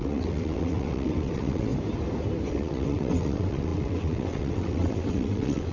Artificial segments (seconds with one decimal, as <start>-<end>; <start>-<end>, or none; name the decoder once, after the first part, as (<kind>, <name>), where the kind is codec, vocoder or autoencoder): 0.0-1.7 (vocoder, WaveNeXt); 2.5-5.7